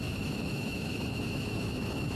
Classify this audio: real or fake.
fake